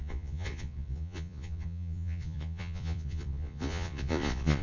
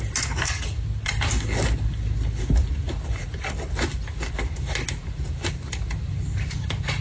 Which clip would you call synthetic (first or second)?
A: first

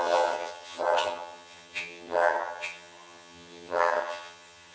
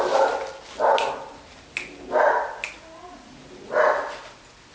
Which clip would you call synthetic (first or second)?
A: first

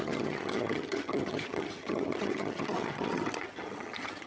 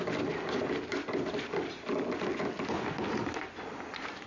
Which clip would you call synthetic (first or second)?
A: first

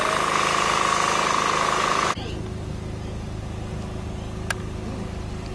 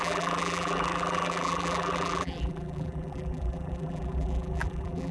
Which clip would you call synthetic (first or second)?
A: second